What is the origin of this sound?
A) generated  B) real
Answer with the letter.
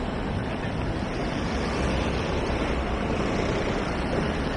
A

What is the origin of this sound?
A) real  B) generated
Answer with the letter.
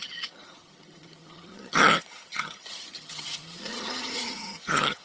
B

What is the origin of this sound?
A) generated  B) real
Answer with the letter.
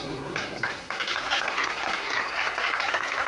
A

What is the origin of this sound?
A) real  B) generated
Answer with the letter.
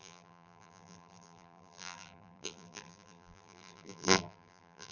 B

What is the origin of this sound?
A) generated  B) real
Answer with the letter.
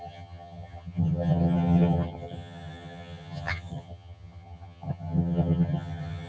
A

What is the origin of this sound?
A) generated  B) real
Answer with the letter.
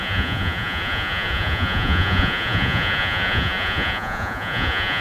A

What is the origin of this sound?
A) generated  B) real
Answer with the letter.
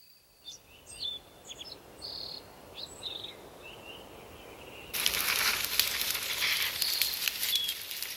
B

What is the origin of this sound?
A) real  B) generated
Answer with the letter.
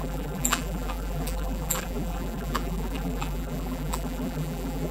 B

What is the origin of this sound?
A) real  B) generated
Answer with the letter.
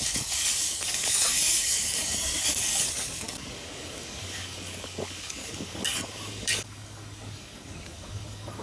B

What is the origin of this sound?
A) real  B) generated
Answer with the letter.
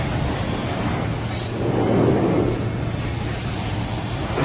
A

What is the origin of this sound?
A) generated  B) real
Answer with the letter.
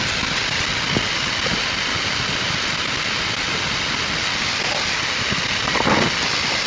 B